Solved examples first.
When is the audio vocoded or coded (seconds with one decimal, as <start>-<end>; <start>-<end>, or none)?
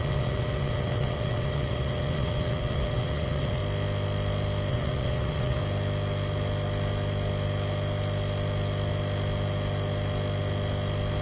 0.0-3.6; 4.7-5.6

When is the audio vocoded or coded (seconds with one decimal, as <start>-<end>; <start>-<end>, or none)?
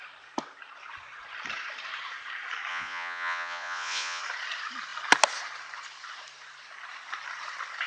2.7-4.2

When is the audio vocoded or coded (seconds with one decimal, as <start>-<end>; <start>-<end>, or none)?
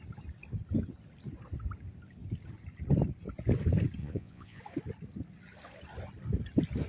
4.0-4.6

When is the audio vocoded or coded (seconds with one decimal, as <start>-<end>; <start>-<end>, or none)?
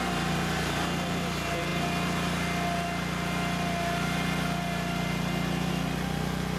none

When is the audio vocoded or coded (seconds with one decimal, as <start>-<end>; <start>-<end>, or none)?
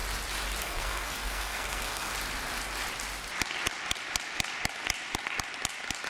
0.6-2.1